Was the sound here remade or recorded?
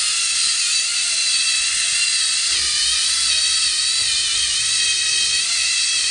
recorded